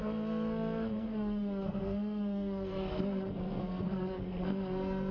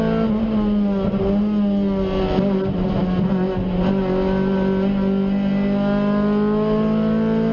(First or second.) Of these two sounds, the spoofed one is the first